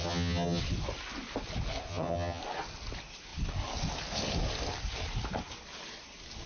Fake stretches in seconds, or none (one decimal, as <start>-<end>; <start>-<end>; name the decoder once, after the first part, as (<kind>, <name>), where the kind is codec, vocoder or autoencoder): 0.0-0.6 (vocoder, HiFi-GAN); 1.9-2.4